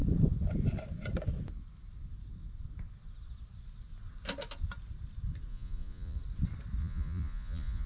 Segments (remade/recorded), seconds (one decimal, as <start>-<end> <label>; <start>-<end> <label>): 0.0-5.5 recorded; 5.5-6.2 remade; 6.2-6.8 recorded; 6.8-7.9 remade